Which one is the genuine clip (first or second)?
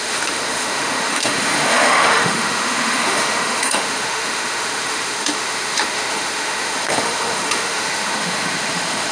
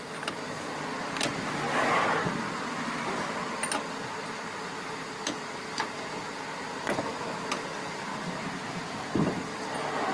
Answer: second